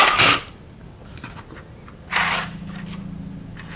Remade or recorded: recorded